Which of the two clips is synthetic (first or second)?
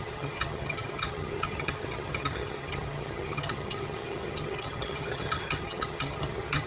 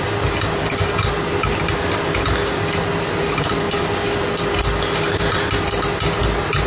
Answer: first